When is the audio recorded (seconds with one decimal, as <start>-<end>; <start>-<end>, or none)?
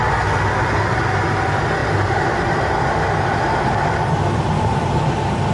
0.0-1.8; 5.1-5.5